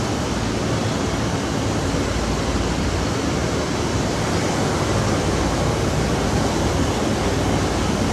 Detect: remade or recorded recorded